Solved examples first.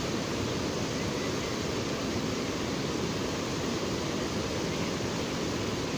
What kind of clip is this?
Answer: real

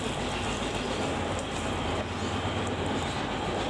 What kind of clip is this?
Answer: real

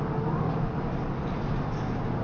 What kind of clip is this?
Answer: real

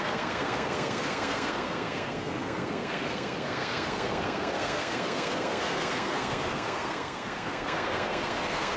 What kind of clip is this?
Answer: fake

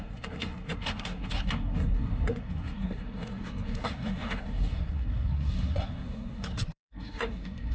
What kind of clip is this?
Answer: fake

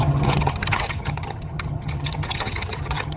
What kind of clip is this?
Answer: fake